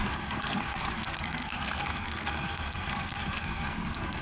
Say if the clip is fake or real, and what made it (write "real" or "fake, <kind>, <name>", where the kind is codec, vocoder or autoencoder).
fake, codec, SNAC